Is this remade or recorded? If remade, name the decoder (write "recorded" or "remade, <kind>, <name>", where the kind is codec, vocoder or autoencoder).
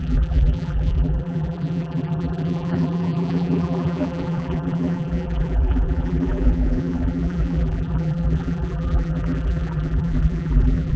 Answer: remade, vocoder, BigVGAN v2